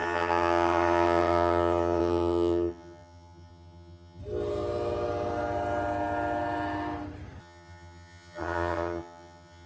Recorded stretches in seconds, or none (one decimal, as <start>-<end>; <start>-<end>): 4.2-7.4